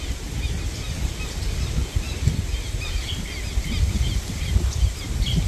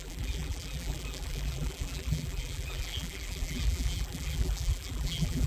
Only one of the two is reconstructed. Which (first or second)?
second